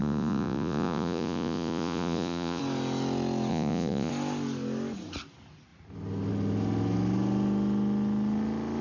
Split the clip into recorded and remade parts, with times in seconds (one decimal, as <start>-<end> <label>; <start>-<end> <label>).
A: 0.0-2.6 remade; 2.6-3.5 recorded; 3.5-4.1 remade; 4.1-8.8 recorded